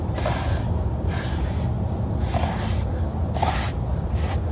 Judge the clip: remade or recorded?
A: recorded